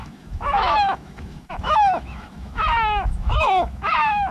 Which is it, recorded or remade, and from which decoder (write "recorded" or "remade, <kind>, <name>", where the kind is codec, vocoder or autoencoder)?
remade, autoencoder, DAC-VAE